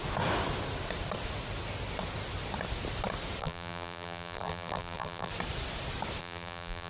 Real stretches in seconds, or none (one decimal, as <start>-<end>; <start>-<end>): 0.0-3.4; 5.3-6.2